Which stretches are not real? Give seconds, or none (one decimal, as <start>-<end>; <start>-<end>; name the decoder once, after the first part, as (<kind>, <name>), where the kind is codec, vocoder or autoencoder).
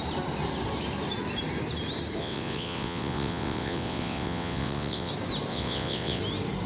2.2-5.1 (vocoder, WaveNeXt); 5.5-6.2